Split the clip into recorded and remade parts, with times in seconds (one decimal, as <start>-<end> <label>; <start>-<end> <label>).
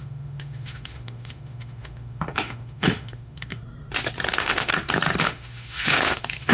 0.0-3.6 remade; 3.6-4.3 recorded; 4.3-4.7 remade; 4.7-5.2 recorded; 5.2-6.5 remade